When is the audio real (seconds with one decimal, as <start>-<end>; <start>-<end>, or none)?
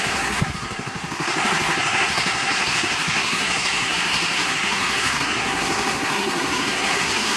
none